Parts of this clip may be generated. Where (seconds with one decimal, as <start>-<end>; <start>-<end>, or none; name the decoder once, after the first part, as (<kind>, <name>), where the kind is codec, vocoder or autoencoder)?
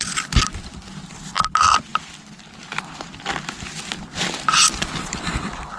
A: none